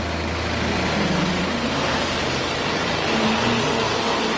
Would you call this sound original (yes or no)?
yes